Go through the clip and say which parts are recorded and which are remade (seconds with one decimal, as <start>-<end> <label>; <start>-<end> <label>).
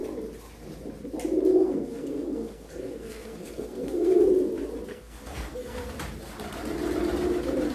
0.0-1.5 recorded; 1.5-4.3 remade; 4.3-4.9 recorded; 4.9-5.9 remade; 5.9-7.7 recorded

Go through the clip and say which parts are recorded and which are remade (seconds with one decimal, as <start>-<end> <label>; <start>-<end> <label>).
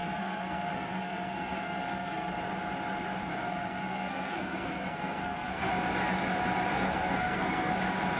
0.0-2.3 remade; 2.3-3.3 recorded; 3.3-5.7 remade; 5.7-6.7 recorded; 6.7-7.7 remade; 7.7-8.2 recorded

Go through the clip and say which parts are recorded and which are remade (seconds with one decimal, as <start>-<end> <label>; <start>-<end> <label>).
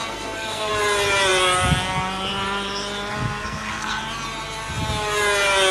0.0-0.7 remade; 0.7-3.1 recorded; 3.1-4.0 remade; 4.0-5.7 recorded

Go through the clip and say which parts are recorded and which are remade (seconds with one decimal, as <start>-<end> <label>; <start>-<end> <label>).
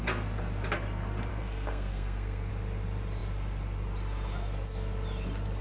0.0-1.3 recorded; 1.3-2.5 remade; 2.5-5.6 recorded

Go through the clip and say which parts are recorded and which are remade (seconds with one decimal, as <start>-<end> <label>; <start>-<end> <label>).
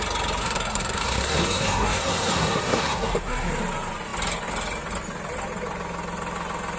0.0-0.4 recorded; 0.4-3.5 remade; 3.5-6.8 recorded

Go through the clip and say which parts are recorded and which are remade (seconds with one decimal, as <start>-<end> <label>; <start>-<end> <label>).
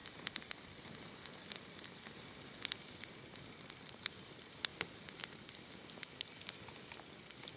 0.0-7.6 recorded